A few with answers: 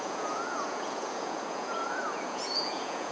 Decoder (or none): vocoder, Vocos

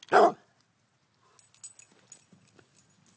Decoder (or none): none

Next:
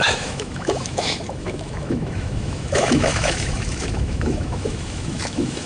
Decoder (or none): autoencoder, DAC-VAE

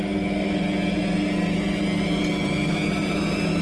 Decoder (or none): none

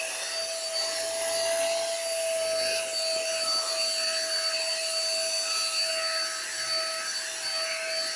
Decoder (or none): none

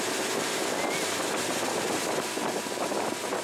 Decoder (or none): none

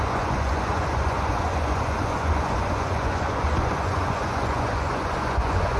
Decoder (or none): vocoder, Vocos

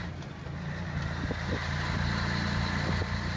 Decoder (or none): none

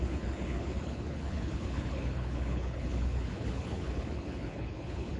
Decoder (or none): codec, HILCodec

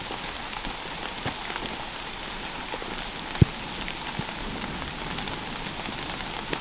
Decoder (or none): none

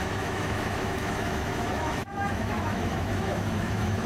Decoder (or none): autoencoder, DAC-VAE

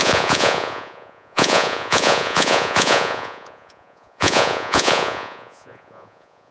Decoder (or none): vocoder, Vocos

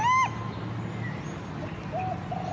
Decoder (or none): none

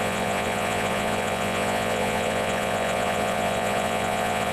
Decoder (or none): vocoder, Vocos